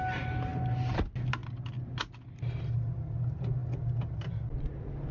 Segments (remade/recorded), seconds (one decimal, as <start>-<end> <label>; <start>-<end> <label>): 0.0-5.1 recorded